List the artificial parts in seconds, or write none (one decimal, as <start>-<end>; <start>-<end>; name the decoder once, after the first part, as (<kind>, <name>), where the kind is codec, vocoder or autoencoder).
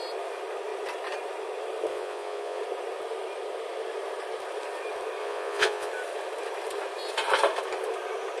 1.9-2.6 (vocoder, Vocos); 5.2-5.9